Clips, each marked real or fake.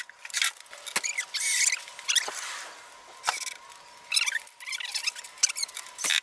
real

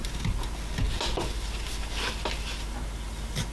real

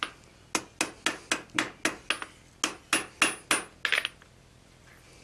real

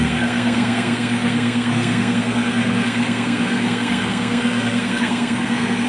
fake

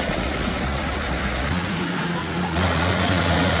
fake